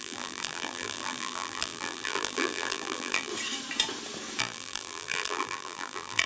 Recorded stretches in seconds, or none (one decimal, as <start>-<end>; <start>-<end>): 3.3-4.4